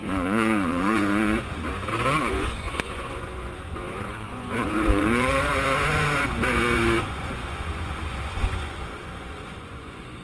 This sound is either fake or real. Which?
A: fake